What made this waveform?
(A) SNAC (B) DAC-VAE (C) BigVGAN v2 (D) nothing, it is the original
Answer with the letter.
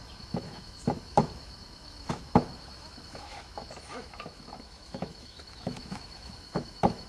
B